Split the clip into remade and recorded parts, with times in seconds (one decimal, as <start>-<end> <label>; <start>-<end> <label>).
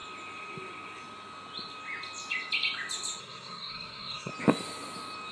0.0-3.2 recorded; 3.2-4.3 remade; 4.3-5.3 recorded